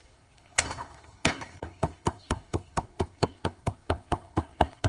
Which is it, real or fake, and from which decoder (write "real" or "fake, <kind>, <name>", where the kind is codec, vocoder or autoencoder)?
fake, codec, SNAC